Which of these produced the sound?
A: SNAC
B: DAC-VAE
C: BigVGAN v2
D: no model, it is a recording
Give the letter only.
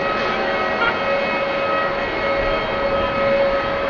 D